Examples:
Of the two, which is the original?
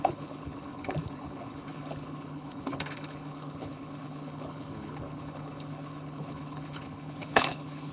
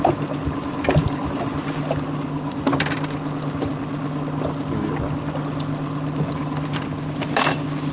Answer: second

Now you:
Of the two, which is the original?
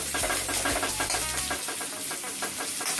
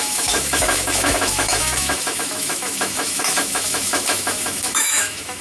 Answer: first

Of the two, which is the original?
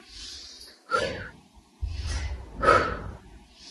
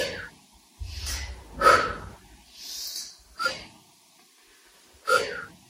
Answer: second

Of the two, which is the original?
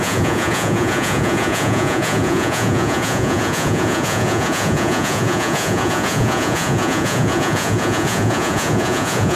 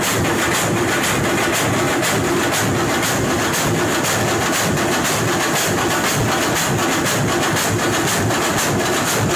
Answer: second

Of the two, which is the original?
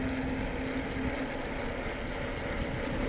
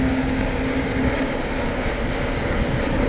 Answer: first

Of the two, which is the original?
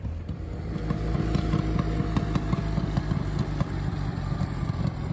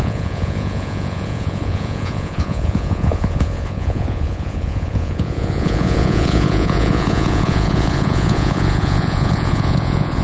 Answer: first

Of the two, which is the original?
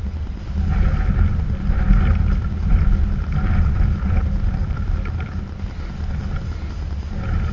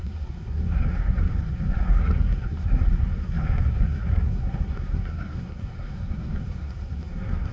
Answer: first